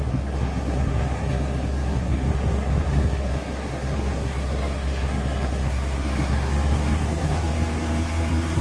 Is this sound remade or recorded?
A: remade